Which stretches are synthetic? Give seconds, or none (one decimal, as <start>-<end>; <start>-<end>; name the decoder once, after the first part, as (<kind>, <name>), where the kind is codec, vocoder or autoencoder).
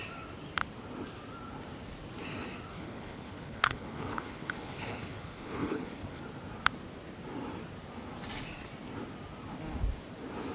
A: 2.7-6.2 (codec, HILCodec)